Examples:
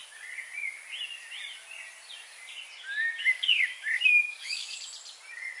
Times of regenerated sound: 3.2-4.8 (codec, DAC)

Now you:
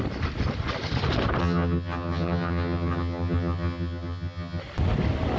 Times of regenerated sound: 1.4-4.6 (vocoder, HiFi-GAN)

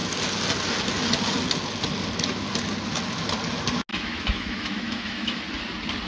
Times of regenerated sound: 3.9-5.4 (autoencoder, DAC-VAE)

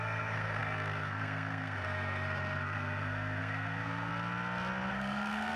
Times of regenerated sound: 0.0-4.1 (codec, SNAC); 4.9-5.6

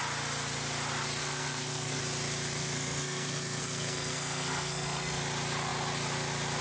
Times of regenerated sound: 1.2-2.0 (codec, SNAC); 2.6-5.2